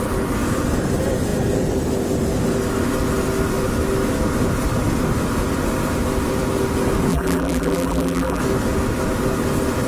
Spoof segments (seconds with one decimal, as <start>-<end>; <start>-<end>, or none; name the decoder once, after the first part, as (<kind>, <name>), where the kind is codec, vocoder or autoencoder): 7.1-8.4 (vocoder, BigVGAN v2)